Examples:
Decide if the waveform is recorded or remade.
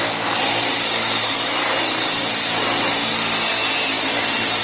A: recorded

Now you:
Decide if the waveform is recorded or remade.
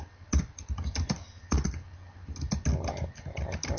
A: recorded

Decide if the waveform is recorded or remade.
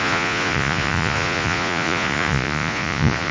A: remade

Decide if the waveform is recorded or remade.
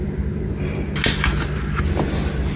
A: recorded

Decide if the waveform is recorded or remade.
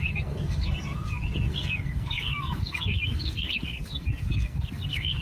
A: remade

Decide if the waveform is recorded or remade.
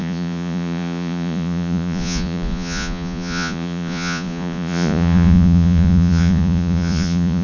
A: remade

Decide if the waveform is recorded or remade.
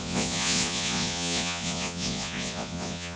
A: remade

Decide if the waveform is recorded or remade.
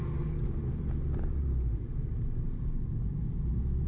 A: recorded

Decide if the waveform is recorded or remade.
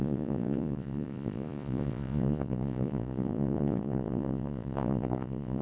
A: remade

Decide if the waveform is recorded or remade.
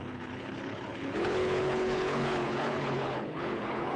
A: remade